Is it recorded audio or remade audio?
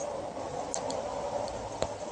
recorded